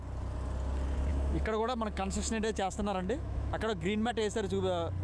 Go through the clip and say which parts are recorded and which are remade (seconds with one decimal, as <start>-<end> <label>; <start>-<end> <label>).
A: 0.0-1.1 recorded; 1.1-4.1 remade; 4.1-5.0 recorded

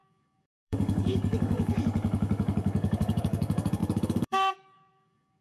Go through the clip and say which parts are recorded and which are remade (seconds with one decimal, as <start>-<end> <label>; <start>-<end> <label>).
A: 0.0-5.4 remade